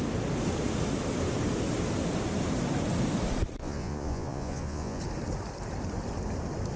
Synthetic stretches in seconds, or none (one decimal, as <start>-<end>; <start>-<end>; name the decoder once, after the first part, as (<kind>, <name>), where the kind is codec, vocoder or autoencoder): 3.6-5.0 (vocoder, Vocos)